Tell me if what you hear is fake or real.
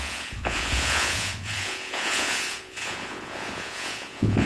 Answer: fake